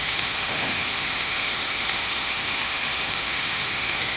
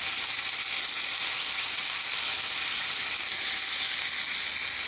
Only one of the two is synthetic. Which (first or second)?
first